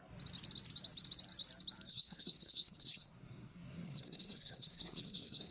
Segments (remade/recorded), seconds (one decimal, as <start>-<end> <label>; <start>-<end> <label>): 0.0-1.9 recorded; 1.9-5.5 remade